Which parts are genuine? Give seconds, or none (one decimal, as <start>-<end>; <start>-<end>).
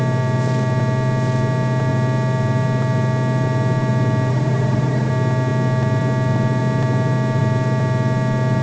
0.0-4.3; 5.1-8.6